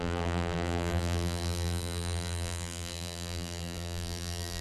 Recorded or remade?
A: remade